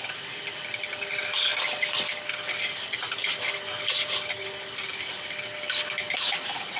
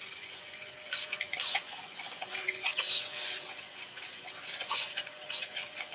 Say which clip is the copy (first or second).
second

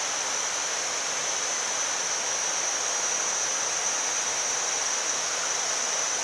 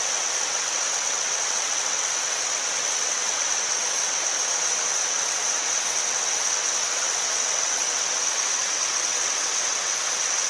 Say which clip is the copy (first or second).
second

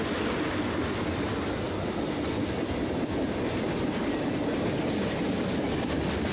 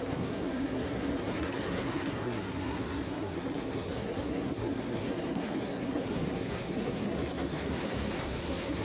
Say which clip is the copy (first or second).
second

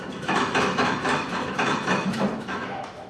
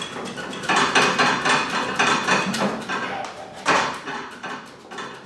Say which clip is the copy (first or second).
first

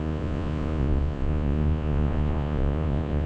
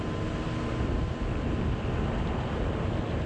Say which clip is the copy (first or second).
first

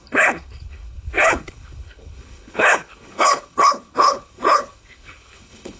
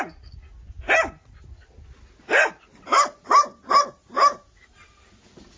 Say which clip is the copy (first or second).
first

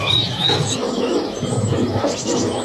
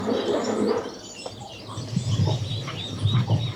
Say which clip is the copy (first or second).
first